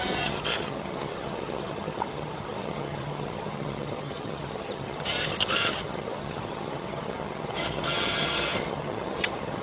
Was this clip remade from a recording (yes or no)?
yes